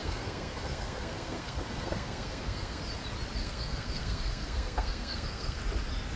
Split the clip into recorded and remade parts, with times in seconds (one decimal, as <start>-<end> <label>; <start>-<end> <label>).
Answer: 0.0-2.8 remade; 2.8-3.4 recorded; 3.4-5.6 remade; 5.6-6.2 recorded